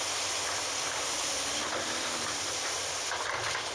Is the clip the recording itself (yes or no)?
yes